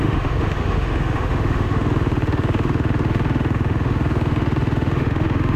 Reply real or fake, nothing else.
fake